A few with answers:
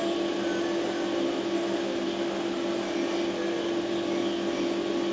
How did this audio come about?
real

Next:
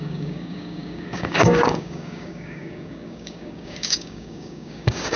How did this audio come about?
fake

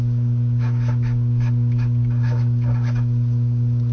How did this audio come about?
fake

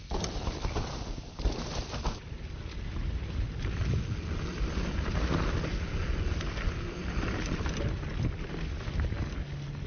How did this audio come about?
real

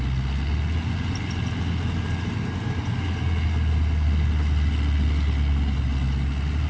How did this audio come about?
real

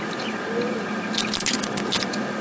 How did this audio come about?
real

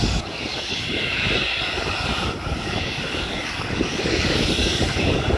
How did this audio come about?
fake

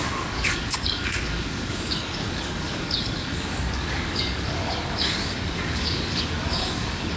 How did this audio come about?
fake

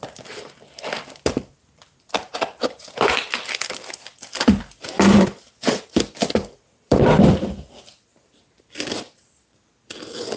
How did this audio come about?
real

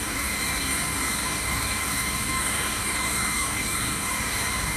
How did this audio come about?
fake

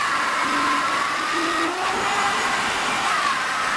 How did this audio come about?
real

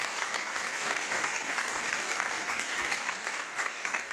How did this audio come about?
fake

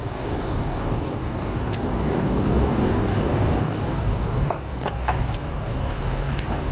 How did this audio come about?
fake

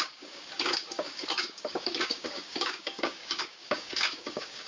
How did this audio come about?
fake